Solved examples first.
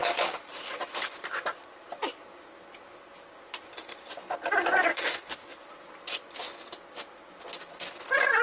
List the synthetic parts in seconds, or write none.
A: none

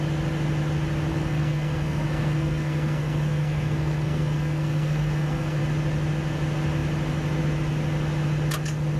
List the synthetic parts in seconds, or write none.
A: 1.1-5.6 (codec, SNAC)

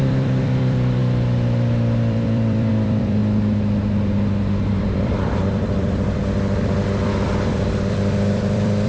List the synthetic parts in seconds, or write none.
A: 0.0-3.2 (vocoder, BigVGAN v2); 4.8-6.2; 7.5-8.9